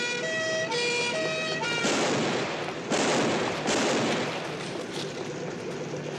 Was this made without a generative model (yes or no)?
yes